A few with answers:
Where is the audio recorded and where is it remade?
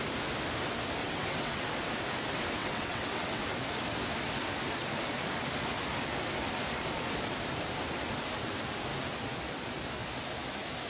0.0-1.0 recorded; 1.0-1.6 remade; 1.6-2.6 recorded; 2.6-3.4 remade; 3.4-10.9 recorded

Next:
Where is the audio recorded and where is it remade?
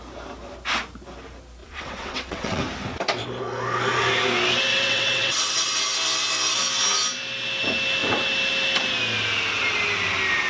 0.0-1.6 recorded; 1.6-2.6 remade; 2.6-4.7 recorded; 4.7-5.8 remade; 5.8-10.5 recorded